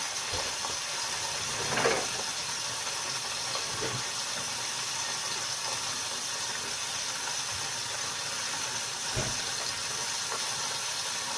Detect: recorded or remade recorded